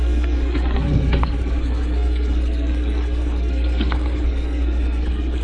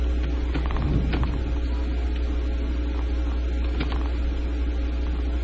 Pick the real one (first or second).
second